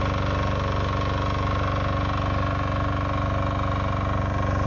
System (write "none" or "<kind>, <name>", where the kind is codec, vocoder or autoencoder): none